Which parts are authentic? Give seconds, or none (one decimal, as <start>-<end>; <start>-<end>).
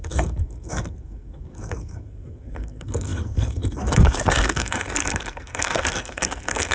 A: none